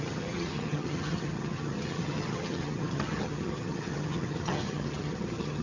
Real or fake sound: fake